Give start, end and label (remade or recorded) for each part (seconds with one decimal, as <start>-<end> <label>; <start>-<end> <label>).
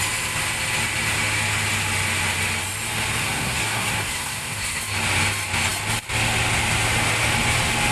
0.0-3.2 recorded; 3.2-4.8 remade; 4.8-7.9 recorded